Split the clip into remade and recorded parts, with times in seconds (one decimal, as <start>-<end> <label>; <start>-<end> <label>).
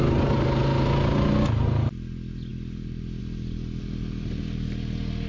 0.0-5.3 recorded